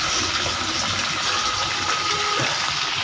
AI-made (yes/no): no